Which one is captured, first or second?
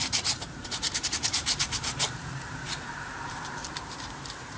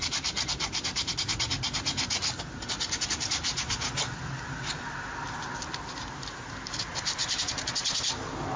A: second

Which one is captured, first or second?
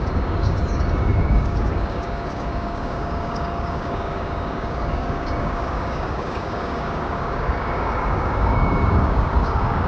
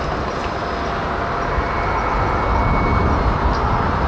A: second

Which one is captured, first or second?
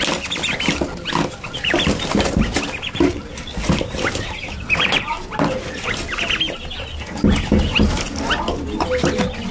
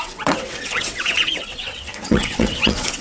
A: first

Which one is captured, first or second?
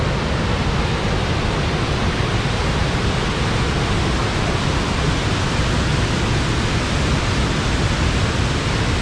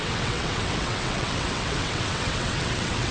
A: first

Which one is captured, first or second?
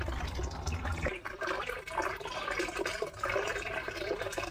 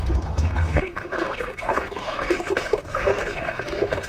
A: first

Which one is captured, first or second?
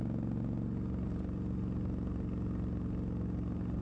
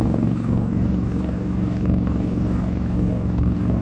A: first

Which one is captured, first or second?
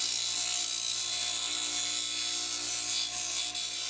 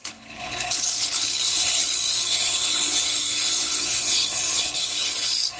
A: first